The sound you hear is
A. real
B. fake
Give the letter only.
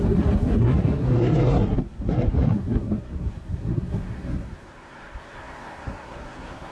B